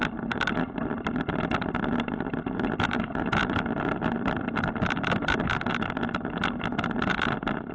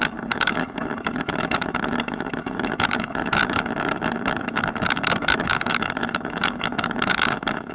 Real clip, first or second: first